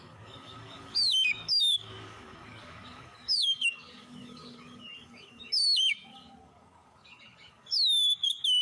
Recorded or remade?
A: remade